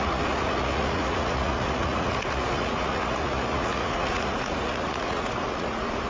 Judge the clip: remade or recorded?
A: remade